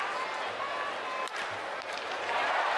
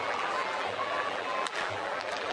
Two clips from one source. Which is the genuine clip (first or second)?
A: first